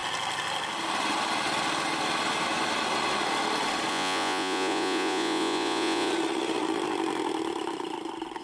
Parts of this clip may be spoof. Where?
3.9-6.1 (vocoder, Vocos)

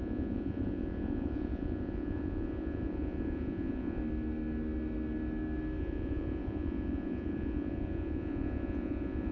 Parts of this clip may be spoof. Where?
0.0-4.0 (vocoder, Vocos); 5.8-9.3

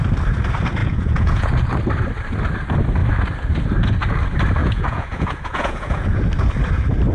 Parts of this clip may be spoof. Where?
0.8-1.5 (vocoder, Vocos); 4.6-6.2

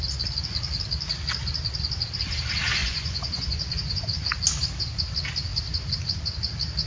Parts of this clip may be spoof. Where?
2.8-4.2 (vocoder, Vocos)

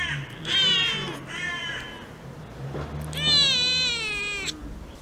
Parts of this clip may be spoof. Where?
none

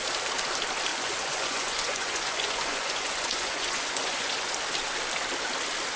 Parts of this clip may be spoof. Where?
0.9-4.5 (vocoder, Vocos)

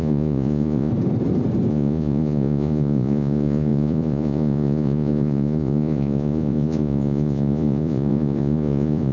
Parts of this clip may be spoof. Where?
0.0-0.9 (vocoder, Vocos); 1.7-9.1

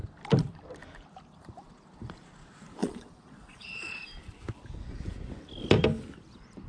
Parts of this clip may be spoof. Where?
2.8-4.0 (vocoder, Vocos)